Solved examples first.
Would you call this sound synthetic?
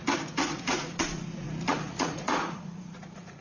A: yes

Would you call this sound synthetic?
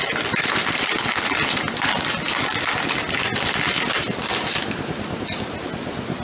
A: no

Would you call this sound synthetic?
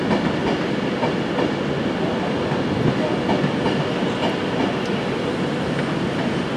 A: no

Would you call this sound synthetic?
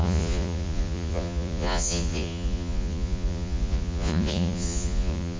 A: yes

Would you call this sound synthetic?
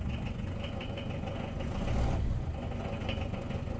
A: yes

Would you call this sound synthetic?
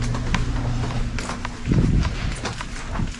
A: no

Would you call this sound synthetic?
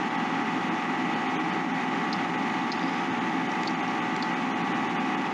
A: no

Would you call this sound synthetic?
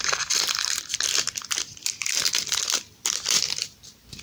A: no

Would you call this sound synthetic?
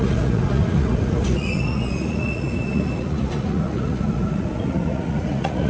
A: yes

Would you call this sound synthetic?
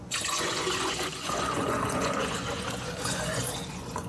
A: yes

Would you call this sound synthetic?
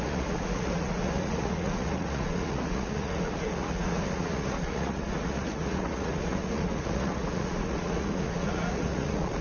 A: yes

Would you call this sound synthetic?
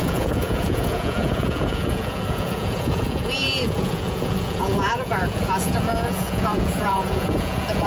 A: yes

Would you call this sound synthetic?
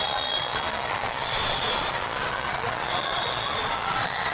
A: yes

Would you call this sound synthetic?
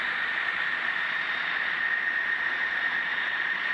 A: yes